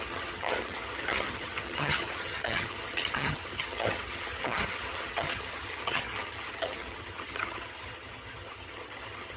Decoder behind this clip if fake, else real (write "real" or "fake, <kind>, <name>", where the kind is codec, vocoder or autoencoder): fake, vocoder, HiFi-GAN